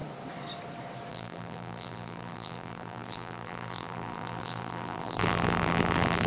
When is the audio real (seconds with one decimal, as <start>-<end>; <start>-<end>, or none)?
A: 0.0-1.1